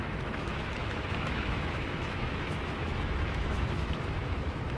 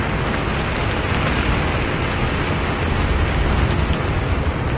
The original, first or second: second